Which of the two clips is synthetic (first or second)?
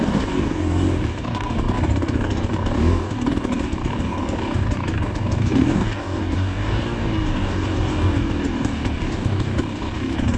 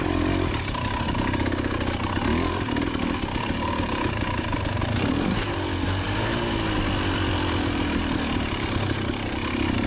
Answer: first